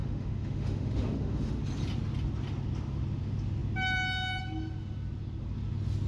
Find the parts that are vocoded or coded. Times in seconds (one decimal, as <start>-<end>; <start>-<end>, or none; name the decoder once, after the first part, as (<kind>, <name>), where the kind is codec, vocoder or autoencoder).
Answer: 0.0-1.6 (autoencoder, DAC-VAE)